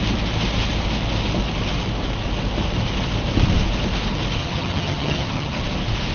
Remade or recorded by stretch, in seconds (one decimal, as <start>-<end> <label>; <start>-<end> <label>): 0.0-4.4 recorded; 4.4-5.6 remade; 5.6-6.1 recorded

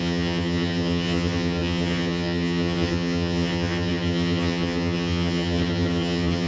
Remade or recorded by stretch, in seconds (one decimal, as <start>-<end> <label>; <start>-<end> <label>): 0.0-6.5 remade

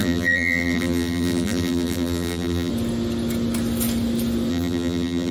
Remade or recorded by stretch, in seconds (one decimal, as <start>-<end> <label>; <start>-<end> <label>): 0.0-2.7 remade; 2.7-4.5 recorded; 4.5-5.3 remade